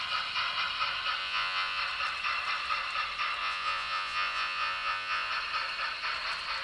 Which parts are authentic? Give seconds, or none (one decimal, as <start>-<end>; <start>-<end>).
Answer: 0.0-1.2; 1.8-3.4; 5.3-6.6